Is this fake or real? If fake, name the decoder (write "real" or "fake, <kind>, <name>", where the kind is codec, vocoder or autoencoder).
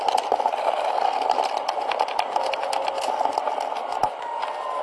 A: real